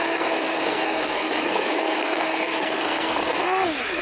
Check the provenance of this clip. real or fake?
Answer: fake